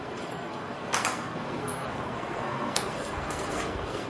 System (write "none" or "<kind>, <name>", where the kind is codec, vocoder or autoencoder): codec, SNAC